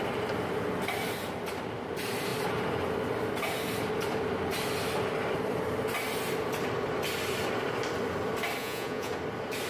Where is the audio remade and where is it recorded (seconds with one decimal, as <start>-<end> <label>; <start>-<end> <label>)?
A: 0.0-8.6 recorded; 8.6-9.1 remade; 9.1-9.7 recorded